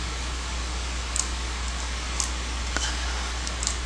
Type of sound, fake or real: fake